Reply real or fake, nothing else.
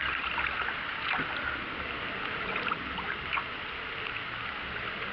real